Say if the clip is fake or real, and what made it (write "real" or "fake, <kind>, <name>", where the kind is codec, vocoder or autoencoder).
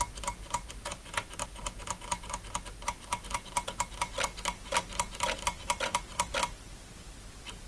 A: real